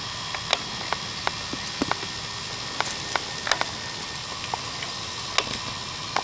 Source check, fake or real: real